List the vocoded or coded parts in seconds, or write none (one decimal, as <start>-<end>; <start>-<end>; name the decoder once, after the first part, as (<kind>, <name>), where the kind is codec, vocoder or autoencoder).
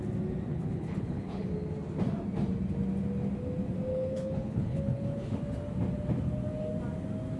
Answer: 0.5-1.5 (codec, HILCodec); 3.9-5.4